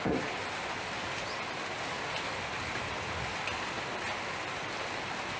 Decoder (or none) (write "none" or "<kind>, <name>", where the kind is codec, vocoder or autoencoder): none